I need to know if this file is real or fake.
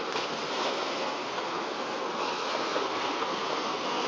fake